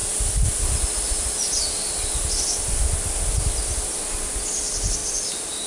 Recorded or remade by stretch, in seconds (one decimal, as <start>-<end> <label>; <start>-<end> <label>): 0.0-5.7 recorded